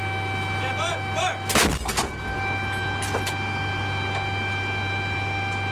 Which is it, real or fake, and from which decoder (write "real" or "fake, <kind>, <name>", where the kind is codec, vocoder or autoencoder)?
real